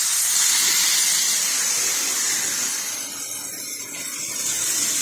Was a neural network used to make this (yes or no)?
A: no